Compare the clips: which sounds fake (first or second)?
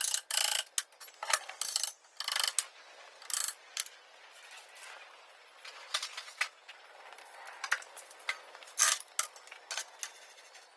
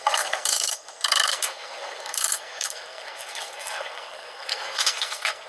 second